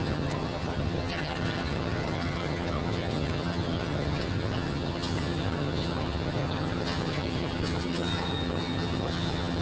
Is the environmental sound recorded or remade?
remade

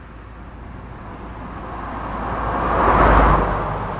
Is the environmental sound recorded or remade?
recorded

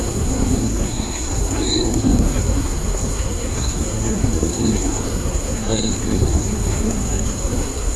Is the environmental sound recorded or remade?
remade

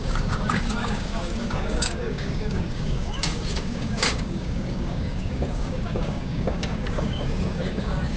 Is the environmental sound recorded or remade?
remade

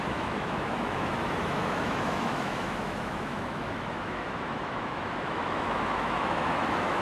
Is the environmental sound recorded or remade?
remade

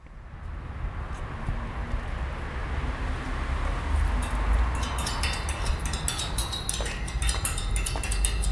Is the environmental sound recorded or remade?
recorded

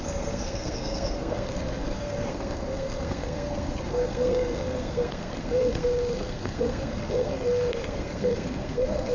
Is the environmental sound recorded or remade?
remade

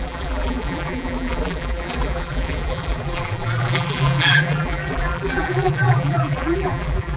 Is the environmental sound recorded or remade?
remade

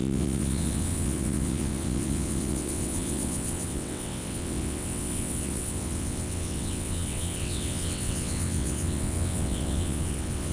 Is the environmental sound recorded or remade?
remade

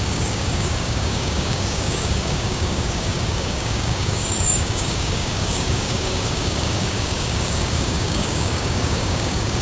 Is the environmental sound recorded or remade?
remade